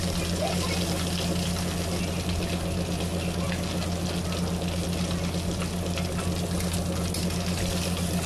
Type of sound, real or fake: real